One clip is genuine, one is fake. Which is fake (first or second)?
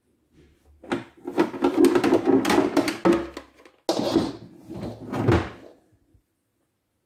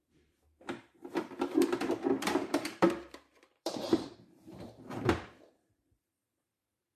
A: second